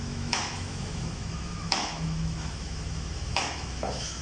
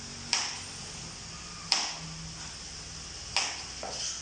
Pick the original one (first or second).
second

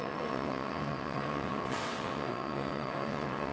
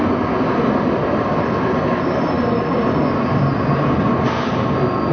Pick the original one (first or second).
second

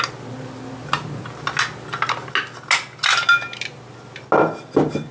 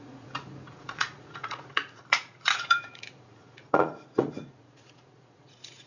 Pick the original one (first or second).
first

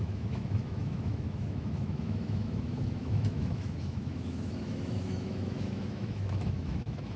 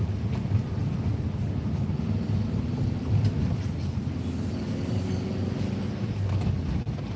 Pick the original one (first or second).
second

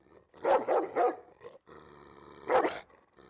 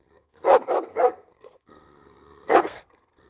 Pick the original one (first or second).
first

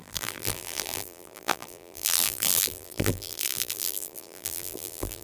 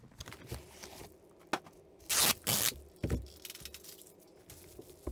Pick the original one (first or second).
second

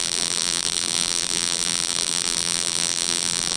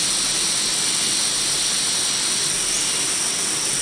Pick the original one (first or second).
second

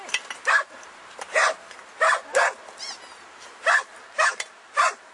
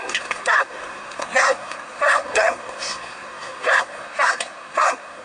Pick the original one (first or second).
first